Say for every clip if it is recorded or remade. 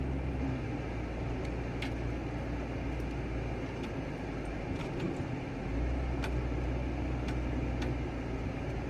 recorded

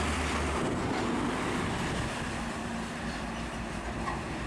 remade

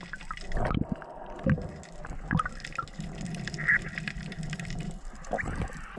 recorded